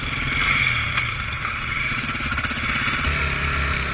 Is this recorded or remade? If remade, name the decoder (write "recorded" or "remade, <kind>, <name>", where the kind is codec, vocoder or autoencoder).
recorded